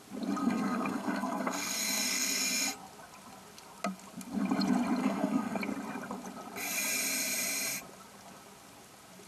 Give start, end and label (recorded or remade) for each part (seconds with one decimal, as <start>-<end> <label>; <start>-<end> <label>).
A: 0.0-0.4 recorded; 0.4-2.4 remade; 2.4-5.0 recorded; 5.0-5.6 remade; 5.6-9.3 recorded